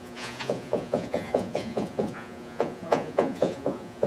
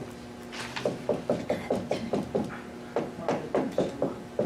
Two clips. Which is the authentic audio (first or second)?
second